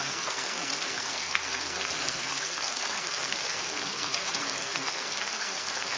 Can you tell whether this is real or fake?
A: fake